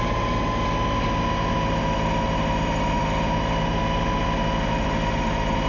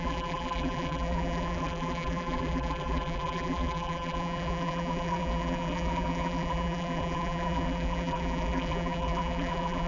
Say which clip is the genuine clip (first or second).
first